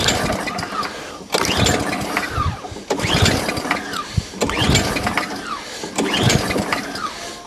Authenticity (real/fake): real